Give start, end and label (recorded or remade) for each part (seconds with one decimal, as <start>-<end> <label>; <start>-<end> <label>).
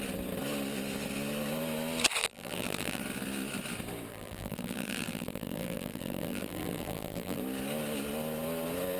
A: 0.0-2.2 recorded; 2.2-3.0 remade; 3.0-4.1 recorded; 4.1-7.4 remade; 7.4-9.0 recorded